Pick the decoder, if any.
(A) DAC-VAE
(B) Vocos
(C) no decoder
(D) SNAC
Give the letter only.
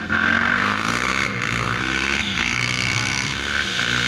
D